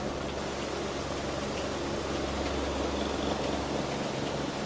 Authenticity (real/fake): real